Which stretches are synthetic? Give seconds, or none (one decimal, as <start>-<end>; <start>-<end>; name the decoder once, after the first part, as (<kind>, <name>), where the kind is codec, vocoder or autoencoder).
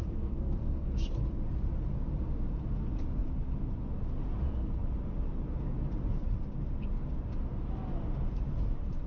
0.0-0.9 (codec, SNAC)